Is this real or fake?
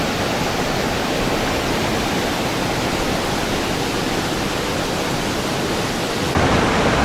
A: real